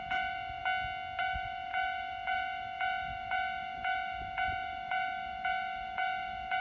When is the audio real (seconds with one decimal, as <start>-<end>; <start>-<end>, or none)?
0.6-1.2